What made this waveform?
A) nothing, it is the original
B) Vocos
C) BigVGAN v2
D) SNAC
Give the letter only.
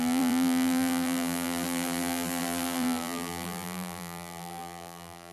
C